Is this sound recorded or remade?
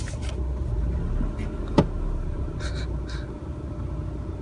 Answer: recorded